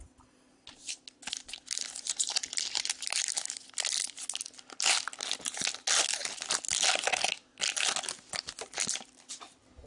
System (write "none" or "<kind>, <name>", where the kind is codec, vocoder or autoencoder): none